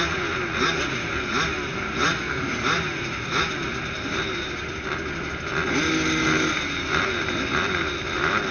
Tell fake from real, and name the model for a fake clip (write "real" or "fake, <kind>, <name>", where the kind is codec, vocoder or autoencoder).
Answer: real